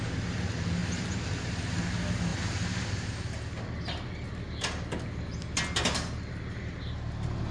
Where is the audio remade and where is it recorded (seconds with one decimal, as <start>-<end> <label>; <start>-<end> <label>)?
0.0-7.5 recorded